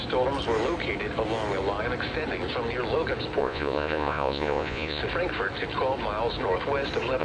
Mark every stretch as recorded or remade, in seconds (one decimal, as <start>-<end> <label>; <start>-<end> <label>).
0.0-3.4 recorded; 3.4-5.0 remade; 5.0-7.2 recorded

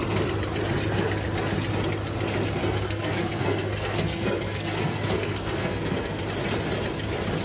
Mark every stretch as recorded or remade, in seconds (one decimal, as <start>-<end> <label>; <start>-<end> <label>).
0.0-2.6 recorded; 2.6-6.2 remade; 6.2-7.4 recorded

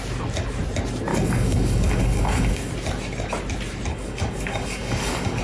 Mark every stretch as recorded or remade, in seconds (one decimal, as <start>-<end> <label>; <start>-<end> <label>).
0.0-1.1 recorded; 1.1-2.7 remade; 2.7-3.9 recorded; 3.9-5.4 remade

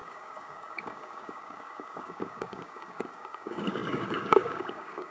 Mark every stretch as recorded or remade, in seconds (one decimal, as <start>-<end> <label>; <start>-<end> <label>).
0.0-5.1 remade